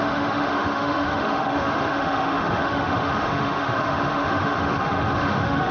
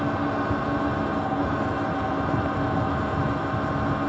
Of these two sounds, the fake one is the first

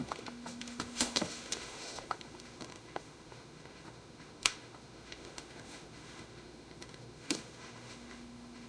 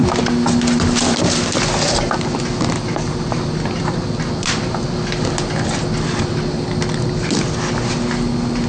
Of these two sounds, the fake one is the first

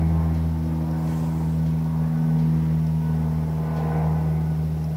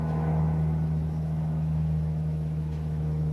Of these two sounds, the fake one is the second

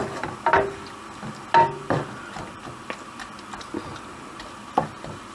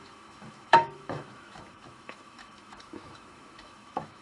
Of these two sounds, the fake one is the second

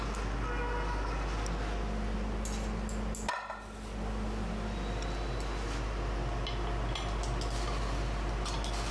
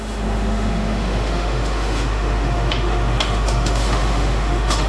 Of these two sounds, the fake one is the second